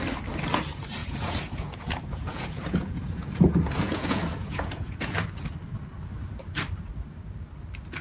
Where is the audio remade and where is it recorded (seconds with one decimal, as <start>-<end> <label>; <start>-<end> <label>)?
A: 0.0-1.0 recorded; 1.0-5.1 remade; 5.1-8.0 recorded